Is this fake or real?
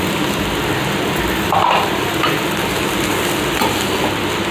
real